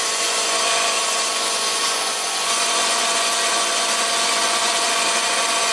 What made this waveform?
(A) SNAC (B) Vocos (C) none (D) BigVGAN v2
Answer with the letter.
B